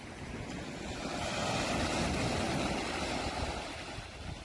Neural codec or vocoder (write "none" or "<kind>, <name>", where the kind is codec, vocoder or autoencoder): none